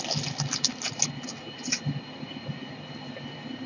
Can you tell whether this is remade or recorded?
recorded